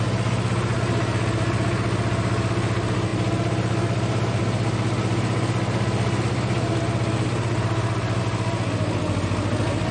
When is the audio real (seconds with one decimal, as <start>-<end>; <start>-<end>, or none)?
0.0-9.9